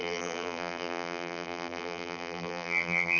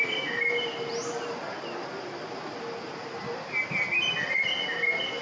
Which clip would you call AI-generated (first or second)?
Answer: first